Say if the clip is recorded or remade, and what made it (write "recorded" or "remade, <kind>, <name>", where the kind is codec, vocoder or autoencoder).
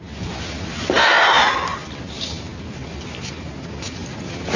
recorded